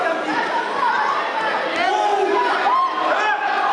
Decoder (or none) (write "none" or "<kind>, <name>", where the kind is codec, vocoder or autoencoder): none